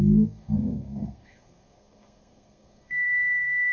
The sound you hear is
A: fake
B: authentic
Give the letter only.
A